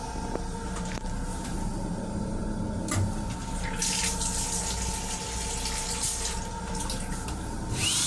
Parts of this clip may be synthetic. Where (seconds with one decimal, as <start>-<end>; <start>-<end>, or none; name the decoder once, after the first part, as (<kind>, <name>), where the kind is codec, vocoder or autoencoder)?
1.3-2.4 (vocoder, BigVGAN v2)

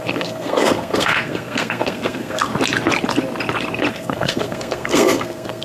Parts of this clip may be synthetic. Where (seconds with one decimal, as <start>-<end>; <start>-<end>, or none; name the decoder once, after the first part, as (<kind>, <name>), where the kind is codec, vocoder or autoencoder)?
0.0-2.5 (codec, SNAC); 3.9-5.6

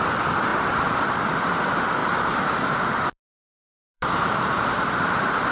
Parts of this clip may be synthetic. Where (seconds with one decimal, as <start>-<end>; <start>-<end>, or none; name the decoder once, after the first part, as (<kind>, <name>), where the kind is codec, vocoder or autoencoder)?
0.5-1.2 (vocoder, BigVGAN v2); 2.0-5.5